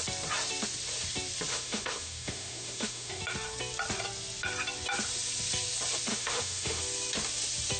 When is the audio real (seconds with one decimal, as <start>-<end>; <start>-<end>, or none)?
0.0-1.5; 3.2-6.1; 6.8-7.8